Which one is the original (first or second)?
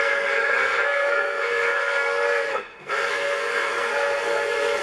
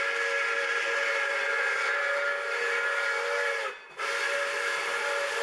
second